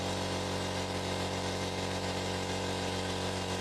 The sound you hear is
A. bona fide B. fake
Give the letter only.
B